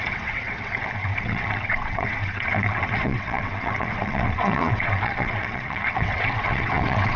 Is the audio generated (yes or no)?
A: yes